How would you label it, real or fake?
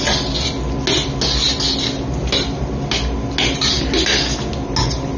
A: real